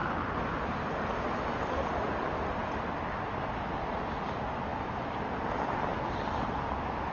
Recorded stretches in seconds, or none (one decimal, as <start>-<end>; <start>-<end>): 0.0-7.1